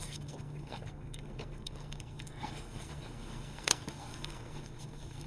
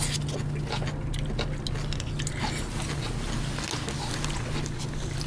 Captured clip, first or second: second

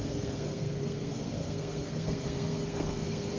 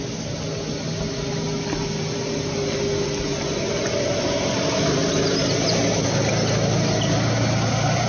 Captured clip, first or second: second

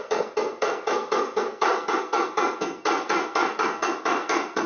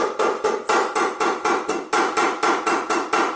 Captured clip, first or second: second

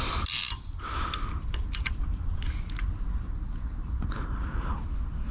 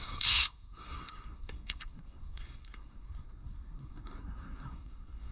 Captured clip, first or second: first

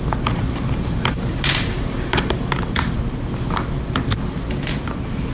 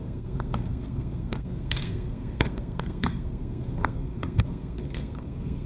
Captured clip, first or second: first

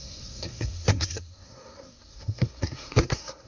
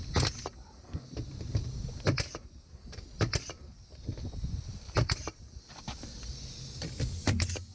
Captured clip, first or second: second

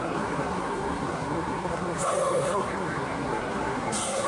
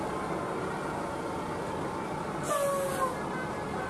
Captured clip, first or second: second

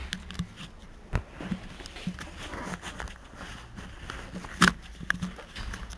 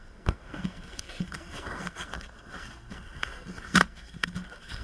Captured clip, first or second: first